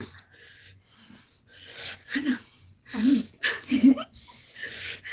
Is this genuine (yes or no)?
no